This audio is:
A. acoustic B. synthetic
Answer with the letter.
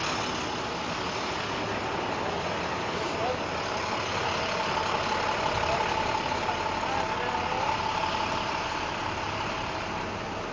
A